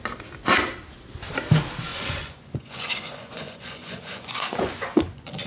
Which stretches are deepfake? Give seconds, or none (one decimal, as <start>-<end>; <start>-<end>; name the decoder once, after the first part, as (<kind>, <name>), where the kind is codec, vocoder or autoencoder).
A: 1.9-5.5 (vocoder, Vocos)